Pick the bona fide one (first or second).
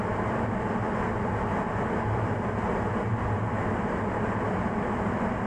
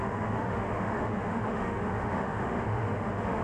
first